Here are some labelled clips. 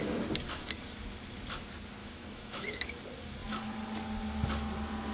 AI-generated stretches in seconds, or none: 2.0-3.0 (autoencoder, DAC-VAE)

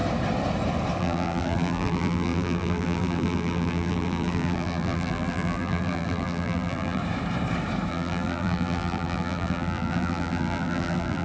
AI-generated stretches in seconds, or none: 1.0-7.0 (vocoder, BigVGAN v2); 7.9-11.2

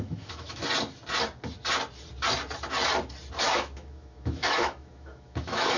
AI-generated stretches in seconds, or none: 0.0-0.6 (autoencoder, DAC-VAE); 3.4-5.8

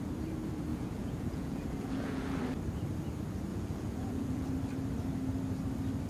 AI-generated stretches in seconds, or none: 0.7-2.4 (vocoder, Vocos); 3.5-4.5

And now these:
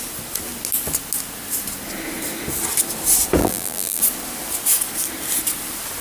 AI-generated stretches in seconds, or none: 3.4-4.0 (vocoder, BigVGAN v2)